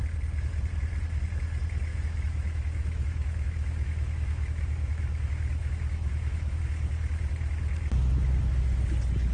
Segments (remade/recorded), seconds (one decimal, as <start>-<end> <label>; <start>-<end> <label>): 0.0-1.9 recorded; 1.9-6.6 remade; 6.6-9.3 recorded

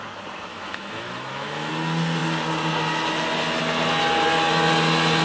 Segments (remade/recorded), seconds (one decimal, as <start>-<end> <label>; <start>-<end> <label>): 0.0-0.5 recorded; 0.5-1.7 remade; 1.7-5.2 recorded

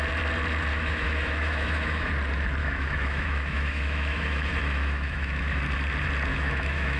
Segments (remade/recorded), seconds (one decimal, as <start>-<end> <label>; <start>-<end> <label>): 0.0-0.7 recorded; 0.7-2.1 remade; 2.1-2.6 recorded; 2.6-5.6 remade; 5.6-6.3 recorded; 6.3-7.0 remade

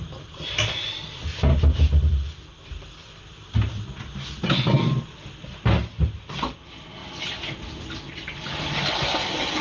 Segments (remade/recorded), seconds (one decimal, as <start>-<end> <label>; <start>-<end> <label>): 0.0-9.6 recorded

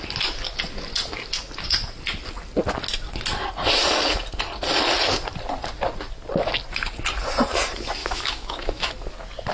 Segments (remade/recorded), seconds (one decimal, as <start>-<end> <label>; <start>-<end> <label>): 0.0-8.0 recorded; 8.0-8.9 remade; 8.9-9.5 recorded

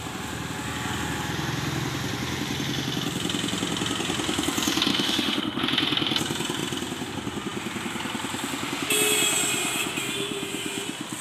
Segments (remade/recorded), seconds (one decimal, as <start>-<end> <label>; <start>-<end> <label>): 0.0-4.9 recorded; 4.9-5.6 remade; 5.6-11.2 recorded

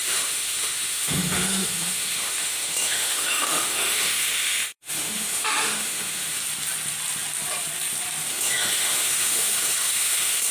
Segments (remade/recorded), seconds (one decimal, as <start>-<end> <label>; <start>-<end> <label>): 0.0-6.4 remade; 6.4-8.3 recorded; 8.3-10.5 remade

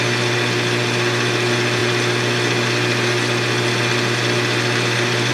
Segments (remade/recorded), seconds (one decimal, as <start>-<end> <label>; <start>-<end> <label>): 0.0-5.3 recorded